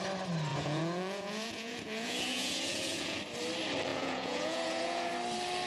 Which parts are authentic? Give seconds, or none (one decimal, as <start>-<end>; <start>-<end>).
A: 0.0-0.5; 3.2-3.9; 5.1-5.7